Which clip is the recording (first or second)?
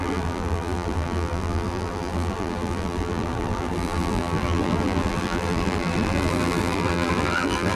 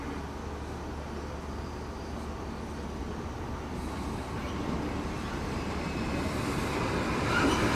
second